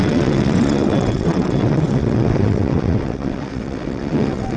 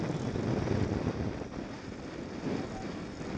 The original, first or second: second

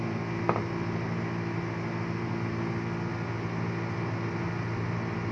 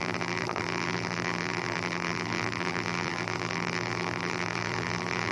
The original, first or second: first